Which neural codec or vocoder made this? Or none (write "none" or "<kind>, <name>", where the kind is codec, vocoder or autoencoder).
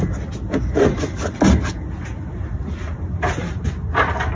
none